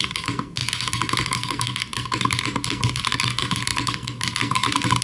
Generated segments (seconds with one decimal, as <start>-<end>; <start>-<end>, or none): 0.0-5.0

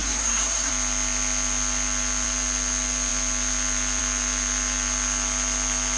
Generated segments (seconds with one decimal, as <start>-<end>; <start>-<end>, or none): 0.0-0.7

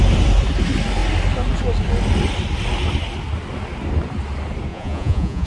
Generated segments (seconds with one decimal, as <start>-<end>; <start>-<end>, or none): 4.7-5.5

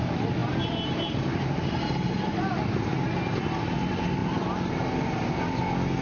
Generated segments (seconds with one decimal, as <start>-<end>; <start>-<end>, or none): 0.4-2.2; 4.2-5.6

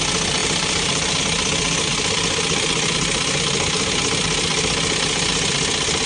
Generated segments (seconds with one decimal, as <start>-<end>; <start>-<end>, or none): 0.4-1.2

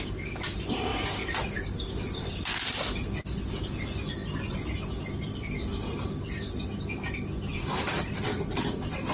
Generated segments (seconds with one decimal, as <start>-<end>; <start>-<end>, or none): 4.2-5.7; 7.5-9.1